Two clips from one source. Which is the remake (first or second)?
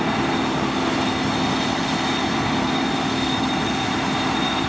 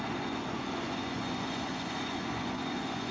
second